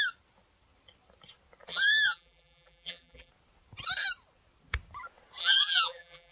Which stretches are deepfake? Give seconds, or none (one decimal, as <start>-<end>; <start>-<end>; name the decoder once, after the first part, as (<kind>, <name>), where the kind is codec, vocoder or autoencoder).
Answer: 1.7-3.3 (vocoder, BigVGAN v2); 5.4-6.3